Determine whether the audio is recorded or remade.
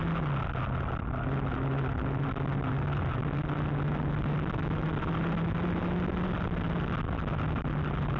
recorded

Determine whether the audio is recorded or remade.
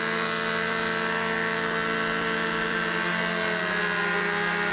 recorded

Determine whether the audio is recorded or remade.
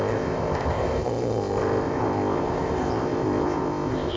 remade